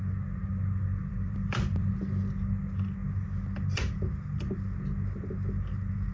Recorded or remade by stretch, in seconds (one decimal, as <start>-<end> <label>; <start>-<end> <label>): 0.0-0.9 recorded; 0.9-1.9 remade; 1.9-6.1 recorded